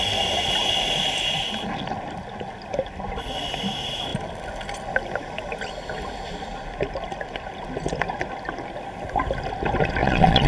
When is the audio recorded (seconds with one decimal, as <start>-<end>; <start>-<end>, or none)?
0.0-10.0